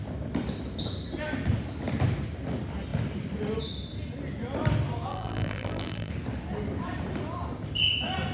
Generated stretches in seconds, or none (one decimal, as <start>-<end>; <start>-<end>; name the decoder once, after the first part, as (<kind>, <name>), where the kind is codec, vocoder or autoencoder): 5.1-6.1 (vocoder, BigVGAN v2)